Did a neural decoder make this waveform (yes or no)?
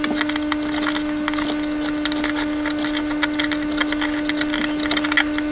no